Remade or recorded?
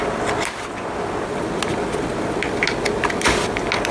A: recorded